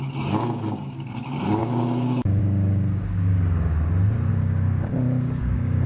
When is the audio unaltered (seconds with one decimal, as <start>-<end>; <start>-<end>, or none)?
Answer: 3.7-4.3